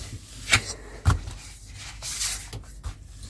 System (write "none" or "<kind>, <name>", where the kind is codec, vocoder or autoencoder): none